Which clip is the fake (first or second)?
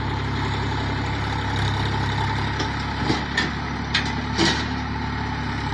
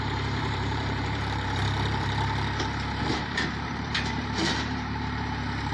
second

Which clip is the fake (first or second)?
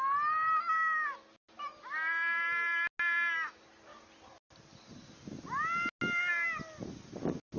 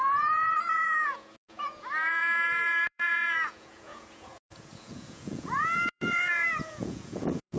second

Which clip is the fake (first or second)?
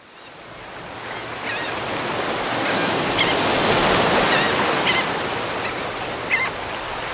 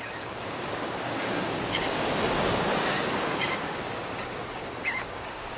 second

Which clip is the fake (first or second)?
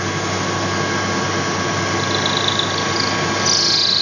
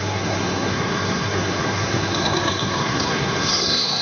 second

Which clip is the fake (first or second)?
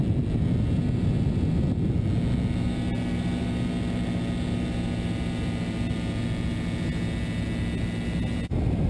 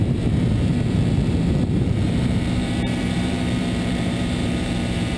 second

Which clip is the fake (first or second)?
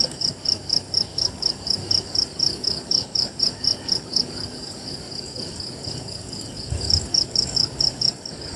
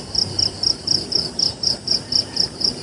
first